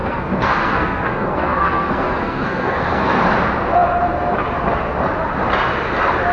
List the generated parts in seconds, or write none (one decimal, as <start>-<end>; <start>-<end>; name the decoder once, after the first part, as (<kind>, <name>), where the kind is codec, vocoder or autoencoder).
0.0-3.2 (codec, SNAC)